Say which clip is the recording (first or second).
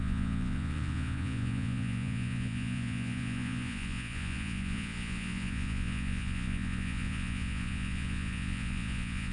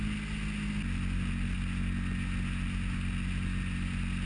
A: second